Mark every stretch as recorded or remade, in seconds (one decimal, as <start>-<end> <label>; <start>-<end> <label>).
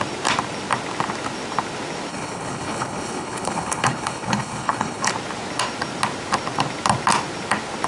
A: 0.0-2.1 recorded; 2.1-5.1 remade; 5.1-7.9 recorded